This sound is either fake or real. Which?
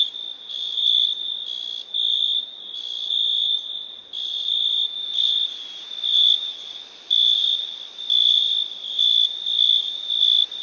real